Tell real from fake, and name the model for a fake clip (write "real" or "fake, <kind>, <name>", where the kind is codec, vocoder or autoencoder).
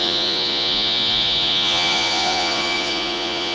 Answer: fake, vocoder, Vocos